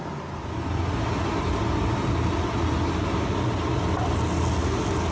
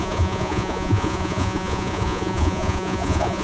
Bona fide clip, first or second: first